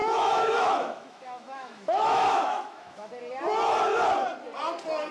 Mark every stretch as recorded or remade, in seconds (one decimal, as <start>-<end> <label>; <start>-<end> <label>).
0.0-3.1 remade; 3.1-5.1 recorded